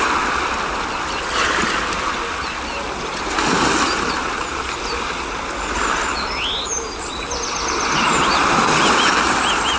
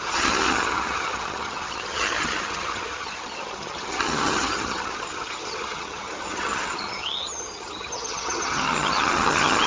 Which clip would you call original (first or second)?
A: first